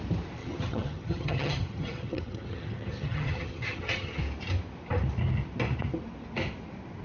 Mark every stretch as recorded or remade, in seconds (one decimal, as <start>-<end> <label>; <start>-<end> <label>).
0.0-0.4 recorded; 0.4-4.2 remade; 4.2-7.0 recorded